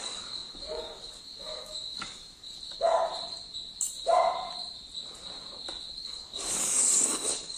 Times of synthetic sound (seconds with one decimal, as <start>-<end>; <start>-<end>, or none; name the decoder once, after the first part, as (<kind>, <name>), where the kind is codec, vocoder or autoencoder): 0.0-3.0 (codec, DAC); 6.0-7.6